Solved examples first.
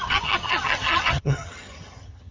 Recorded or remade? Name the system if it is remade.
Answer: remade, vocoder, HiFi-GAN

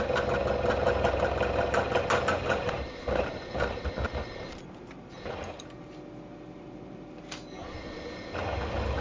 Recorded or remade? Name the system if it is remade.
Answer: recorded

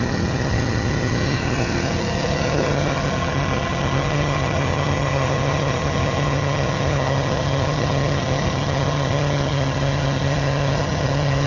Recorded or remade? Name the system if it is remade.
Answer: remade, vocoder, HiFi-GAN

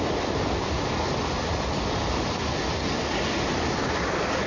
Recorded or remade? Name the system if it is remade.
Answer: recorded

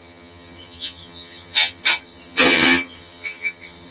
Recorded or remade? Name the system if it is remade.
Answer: remade, vocoder, HiFi-GAN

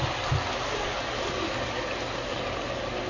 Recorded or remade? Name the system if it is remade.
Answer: recorded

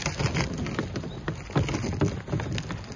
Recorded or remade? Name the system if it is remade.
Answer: recorded